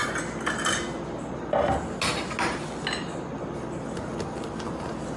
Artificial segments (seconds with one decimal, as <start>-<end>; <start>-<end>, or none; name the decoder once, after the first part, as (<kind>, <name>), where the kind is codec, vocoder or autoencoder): none

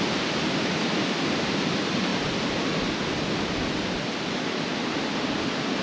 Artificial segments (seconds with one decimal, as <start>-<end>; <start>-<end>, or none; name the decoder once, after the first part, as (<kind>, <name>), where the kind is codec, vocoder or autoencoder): none